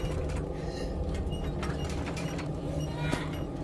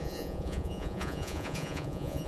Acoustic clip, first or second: first